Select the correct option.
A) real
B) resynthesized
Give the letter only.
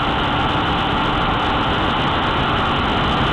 A